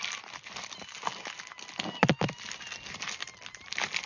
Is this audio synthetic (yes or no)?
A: no